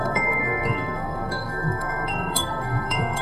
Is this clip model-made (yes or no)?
yes